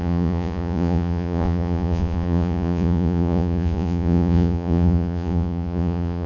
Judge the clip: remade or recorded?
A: remade